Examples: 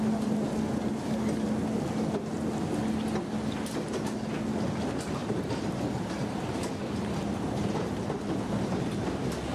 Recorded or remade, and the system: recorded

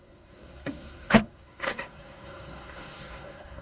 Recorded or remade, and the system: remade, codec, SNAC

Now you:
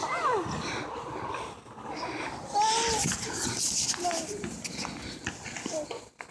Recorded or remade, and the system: recorded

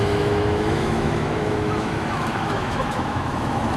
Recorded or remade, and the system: remade, autoencoder, DAC-VAE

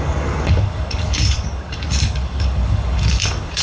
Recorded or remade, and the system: remade, codec, DAC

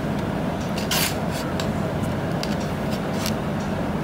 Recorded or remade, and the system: recorded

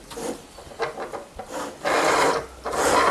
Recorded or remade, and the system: recorded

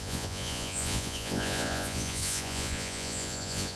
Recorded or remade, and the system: remade, vocoder, Vocos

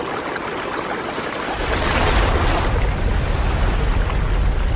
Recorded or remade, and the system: recorded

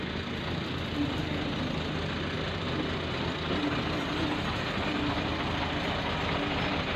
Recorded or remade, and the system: recorded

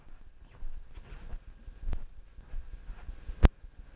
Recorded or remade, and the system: recorded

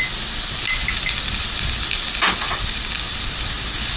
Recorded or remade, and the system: recorded